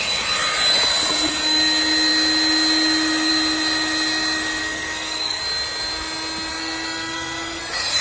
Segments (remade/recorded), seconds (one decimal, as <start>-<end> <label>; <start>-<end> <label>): 0.0-4.6 recorded; 4.6-5.4 remade; 5.4-6.5 recorded; 6.5-7.6 remade; 7.6-8.0 recorded